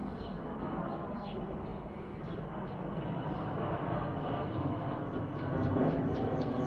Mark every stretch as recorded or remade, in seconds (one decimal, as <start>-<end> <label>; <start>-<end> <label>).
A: 0.0-6.7 remade